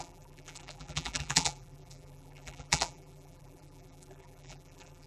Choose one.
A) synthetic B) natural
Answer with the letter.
A